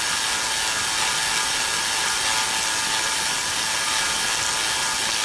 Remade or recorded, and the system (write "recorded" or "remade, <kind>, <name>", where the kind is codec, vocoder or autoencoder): recorded